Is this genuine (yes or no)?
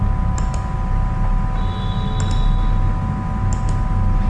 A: yes